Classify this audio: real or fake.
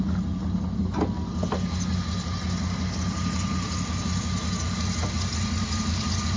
real